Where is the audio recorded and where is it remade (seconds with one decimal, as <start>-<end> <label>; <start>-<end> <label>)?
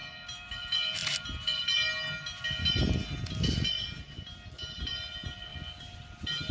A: 0.0-6.5 recorded